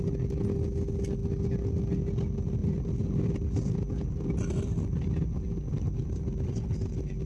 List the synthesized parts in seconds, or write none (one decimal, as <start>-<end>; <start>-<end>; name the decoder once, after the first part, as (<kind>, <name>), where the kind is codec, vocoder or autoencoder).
2.6-7.3 (vocoder, BigVGAN v2)